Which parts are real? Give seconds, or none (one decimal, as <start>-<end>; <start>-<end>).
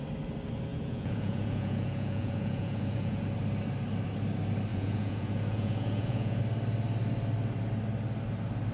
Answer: 0.0-0.7; 3.2-4.7; 6.4-8.7